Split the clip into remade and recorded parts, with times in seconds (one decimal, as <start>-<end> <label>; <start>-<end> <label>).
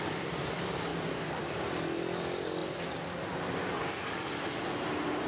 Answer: 0.0-5.3 recorded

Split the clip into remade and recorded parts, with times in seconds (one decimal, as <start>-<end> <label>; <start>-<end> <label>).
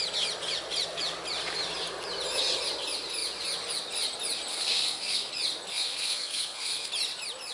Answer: 0.0-4.5 recorded; 4.5-5.3 remade; 5.3-5.7 recorded; 5.7-6.9 remade; 6.9-7.5 recorded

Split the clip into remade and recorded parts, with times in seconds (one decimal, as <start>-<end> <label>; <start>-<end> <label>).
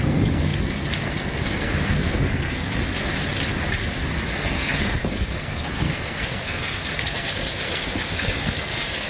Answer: 0.0-2.8 remade; 2.8-4.3 recorded; 4.3-9.1 remade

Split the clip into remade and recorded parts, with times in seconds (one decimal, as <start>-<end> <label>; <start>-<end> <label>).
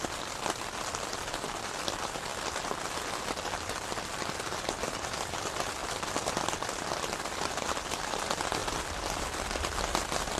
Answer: 0.0-10.4 recorded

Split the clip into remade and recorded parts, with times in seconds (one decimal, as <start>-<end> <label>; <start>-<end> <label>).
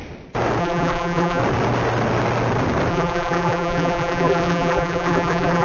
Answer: 0.0-0.6 recorded; 0.6-1.4 remade; 1.4-2.9 recorded; 2.9-5.6 remade